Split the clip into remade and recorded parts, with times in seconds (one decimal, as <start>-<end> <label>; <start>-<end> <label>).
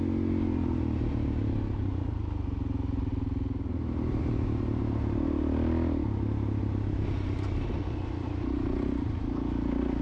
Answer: 0.0-10.0 recorded